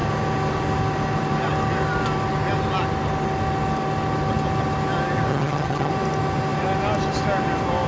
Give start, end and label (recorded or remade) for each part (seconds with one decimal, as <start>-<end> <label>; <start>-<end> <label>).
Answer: 0.0-5.3 recorded; 5.3-5.9 remade; 5.9-7.9 recorded